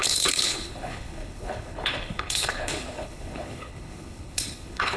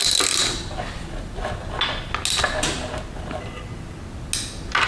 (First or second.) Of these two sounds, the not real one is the first